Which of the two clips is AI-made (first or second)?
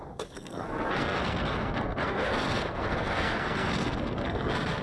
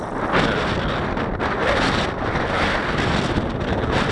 first